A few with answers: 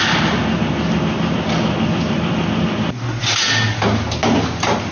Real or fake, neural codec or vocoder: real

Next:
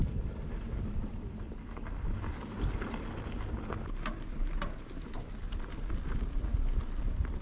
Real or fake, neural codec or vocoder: real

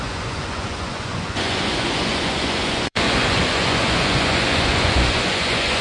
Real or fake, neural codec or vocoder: fake, vocoder, Vocos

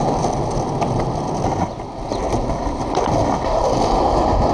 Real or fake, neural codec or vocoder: real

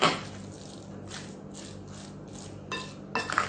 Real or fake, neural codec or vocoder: real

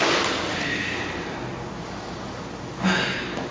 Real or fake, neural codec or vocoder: real